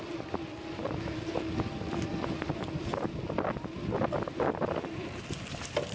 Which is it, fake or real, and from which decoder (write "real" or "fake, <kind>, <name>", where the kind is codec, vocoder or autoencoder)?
real